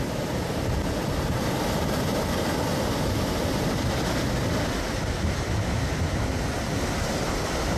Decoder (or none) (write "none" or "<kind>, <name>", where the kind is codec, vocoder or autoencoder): none